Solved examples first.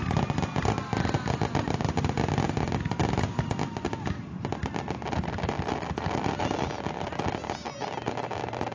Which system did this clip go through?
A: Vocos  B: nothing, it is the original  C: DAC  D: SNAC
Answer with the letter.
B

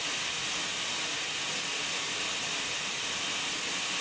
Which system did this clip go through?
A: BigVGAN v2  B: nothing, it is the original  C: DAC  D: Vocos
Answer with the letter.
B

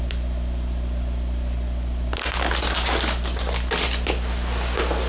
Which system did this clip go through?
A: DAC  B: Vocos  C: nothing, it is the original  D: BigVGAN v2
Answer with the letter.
C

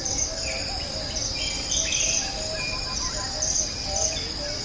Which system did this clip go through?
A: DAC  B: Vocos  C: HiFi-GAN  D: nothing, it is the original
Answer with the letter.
D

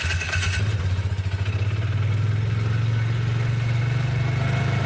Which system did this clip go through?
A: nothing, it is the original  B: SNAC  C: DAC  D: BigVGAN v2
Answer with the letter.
A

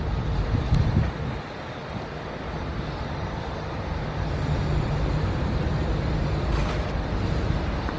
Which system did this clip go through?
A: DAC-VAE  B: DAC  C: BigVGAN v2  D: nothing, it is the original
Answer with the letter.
D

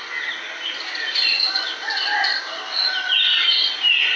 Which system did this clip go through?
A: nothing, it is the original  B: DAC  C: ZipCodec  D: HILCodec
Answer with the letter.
A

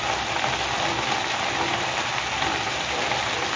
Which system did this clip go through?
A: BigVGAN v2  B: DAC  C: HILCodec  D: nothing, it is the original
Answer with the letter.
D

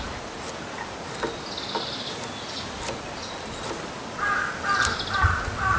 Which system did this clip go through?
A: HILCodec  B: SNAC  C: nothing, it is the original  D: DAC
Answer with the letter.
C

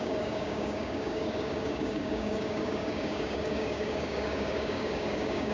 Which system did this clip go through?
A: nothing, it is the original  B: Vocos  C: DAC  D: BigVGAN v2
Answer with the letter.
C